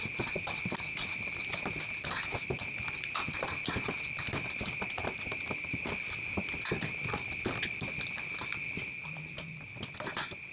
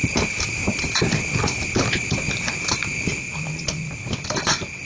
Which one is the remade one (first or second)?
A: second